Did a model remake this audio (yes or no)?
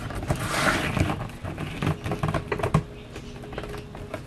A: no